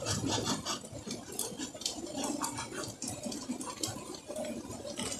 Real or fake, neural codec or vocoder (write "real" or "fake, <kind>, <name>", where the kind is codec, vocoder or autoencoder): real